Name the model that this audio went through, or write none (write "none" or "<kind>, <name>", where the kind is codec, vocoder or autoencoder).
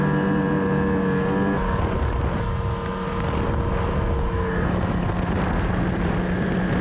none